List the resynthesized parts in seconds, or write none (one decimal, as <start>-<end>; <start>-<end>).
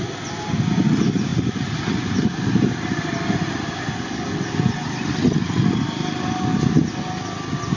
none